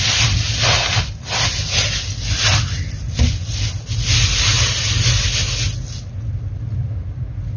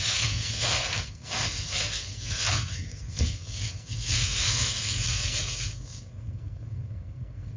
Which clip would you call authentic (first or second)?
first